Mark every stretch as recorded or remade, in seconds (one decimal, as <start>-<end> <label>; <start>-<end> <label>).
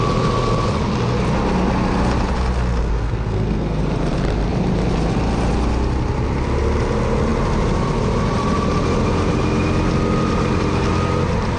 0.0-2.8 recorded; 2.8-3.8 remade; 3.8-11.6 recorded